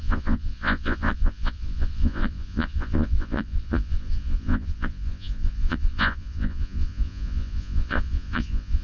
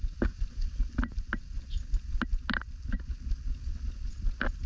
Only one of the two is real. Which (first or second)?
second